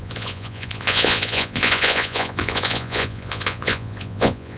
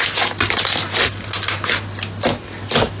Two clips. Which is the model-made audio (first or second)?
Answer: first